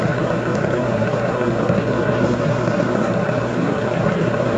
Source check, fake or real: fake